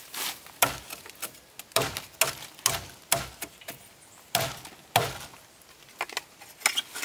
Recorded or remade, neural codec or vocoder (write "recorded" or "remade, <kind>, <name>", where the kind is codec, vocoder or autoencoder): recorded